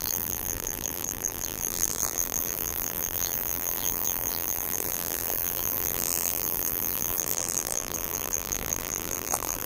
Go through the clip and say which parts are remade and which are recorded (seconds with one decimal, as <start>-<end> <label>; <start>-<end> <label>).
0.0-9.7 remade